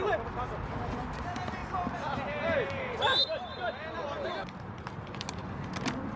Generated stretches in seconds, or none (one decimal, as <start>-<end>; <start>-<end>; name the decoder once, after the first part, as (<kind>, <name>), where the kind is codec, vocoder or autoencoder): none